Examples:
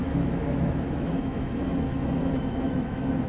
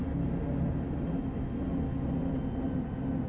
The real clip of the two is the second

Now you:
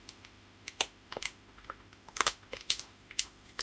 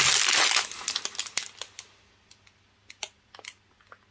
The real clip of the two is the second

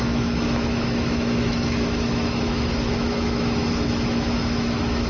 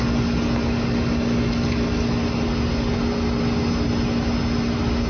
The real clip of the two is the second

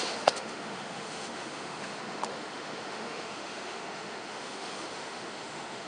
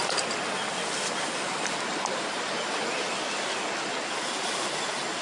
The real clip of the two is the second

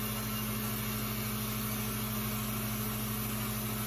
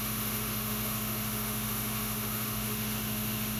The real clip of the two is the first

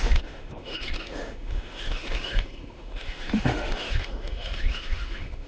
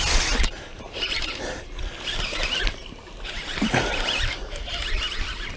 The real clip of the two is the second